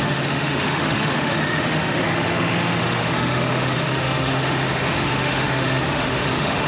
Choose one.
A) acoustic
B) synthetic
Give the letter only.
B